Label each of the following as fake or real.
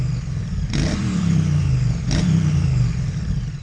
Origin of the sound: fake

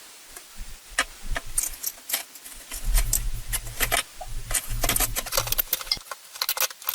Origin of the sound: real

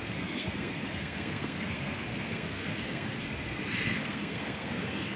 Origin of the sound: fake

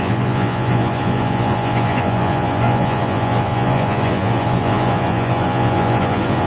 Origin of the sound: fake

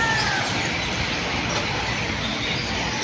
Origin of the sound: real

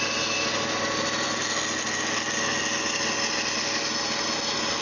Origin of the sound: real